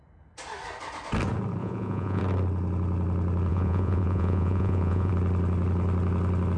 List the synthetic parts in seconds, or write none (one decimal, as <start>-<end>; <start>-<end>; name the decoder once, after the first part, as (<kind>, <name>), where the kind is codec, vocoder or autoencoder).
1.6-2.2 (vocoder, Vocos); 3.5-5.1

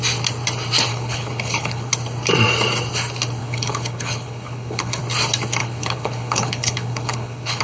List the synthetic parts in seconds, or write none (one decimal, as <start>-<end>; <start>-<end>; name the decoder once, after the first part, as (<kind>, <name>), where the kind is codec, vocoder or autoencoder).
0.9-1.9 (codec, HILCodec); 3.4-5.0; 5.6-7.6

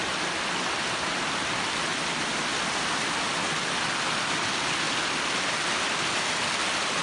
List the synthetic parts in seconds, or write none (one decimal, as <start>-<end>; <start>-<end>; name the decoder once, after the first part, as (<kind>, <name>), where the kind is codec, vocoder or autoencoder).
none

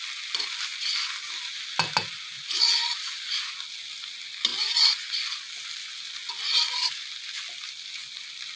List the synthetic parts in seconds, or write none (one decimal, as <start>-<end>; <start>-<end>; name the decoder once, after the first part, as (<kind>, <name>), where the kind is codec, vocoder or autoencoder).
none